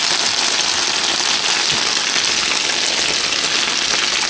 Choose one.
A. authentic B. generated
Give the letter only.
A